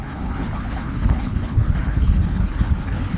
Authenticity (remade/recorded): remade